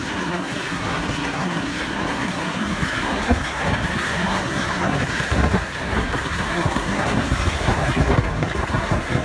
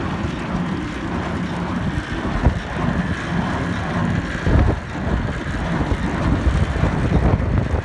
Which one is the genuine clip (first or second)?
second